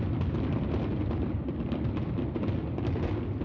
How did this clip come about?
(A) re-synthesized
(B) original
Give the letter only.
B